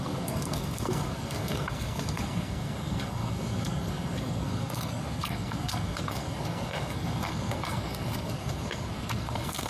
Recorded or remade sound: remade